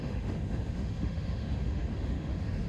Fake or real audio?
fake